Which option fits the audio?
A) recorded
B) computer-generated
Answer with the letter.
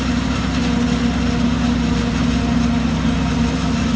A